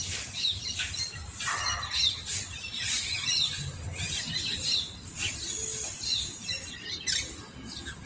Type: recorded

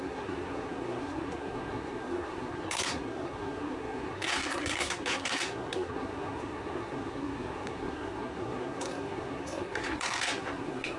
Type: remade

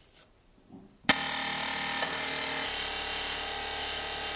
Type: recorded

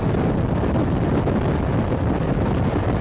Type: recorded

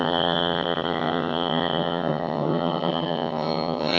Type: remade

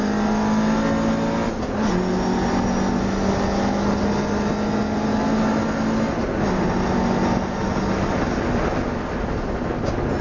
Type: recorded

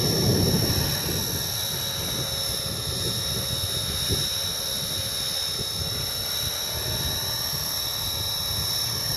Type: recorded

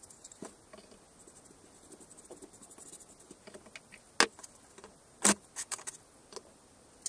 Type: recorded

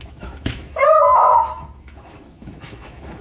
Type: remade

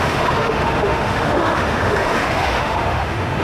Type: remade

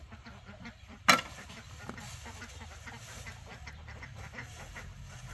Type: recorded